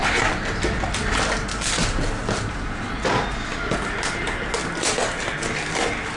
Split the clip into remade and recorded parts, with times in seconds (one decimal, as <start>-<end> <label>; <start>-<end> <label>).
0.0-6.2 recorded